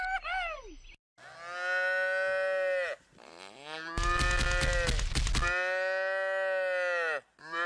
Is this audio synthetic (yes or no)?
no